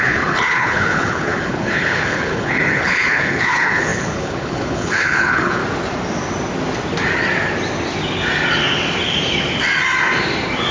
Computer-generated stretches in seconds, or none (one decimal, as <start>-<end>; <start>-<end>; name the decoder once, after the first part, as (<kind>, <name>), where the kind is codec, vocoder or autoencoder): 0.0-5.6 (codec, HILCodec)

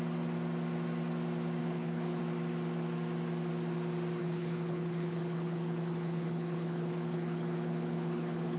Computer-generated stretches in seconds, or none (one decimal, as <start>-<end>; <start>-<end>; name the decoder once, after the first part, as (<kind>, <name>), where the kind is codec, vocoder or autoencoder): 1.6-2.2 (codec, HILCodec); 4.2-8.6

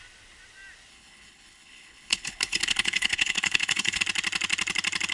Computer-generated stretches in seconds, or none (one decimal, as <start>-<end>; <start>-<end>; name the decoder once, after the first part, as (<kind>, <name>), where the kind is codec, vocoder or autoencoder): 0.9-4.0 (codec, HILCodec)

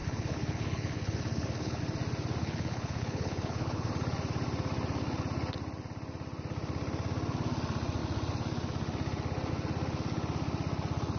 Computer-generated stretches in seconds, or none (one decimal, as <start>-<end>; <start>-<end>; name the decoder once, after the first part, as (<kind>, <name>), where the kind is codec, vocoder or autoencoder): 0.0-1.8 (codec, HILCodec); 2.4-3.9

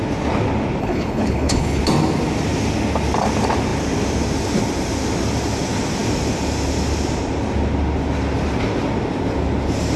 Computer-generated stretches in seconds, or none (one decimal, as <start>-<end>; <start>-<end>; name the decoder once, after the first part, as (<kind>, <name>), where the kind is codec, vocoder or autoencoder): 0.8-1.8 (codec, HILCodec)